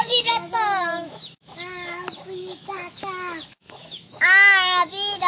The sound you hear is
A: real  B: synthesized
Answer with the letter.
B